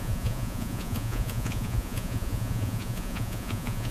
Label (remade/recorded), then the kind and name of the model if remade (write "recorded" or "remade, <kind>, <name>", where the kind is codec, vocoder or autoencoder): remade, vocoder, Vocos